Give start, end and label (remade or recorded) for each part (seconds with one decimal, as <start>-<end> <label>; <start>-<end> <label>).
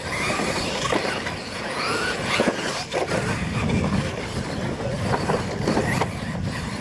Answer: 0.0-1.4 recorded; 1.4-2.7 remade; 2.7-6.8 recorded